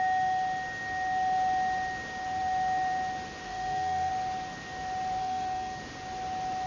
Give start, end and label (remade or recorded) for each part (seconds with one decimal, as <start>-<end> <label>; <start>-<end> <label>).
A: 0.0-3.4 recorded; 3.4-4.1 remade; 4.1-5.2 recorded; 5.2-5.8 remade; 5.8-6.7 recorded